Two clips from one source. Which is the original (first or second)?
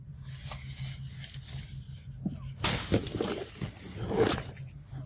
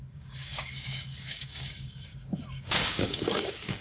first